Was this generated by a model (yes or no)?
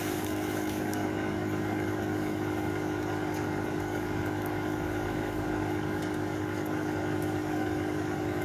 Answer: yes